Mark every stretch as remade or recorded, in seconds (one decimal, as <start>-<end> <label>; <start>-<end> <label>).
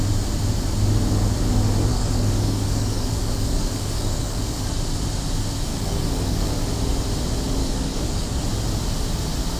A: 0.0-1.9 recorded; 1.9-4.7 remade; 4.7-5.7 recorded; 5.7-6.5 remade; 6.5-7.6 recorded; 7.6-8.4 remade; 8.4-9.6 recorded